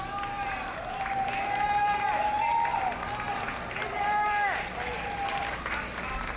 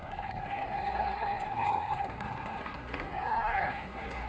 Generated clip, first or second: second